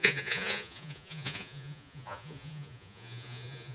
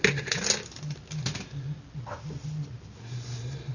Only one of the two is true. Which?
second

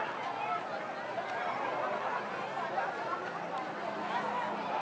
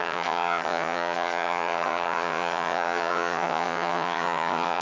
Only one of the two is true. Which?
first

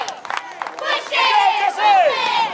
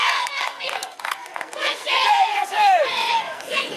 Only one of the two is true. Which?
first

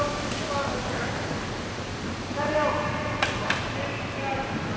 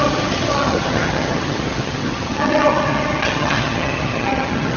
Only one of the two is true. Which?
first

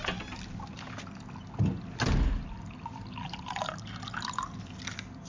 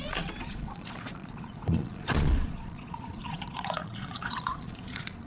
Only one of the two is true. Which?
first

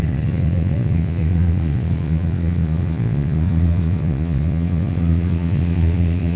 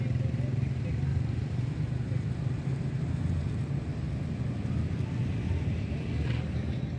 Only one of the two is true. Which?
second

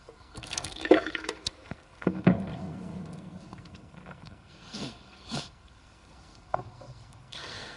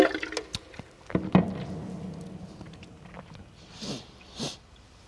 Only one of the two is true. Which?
second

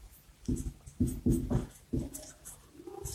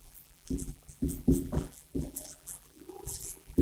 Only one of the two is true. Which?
first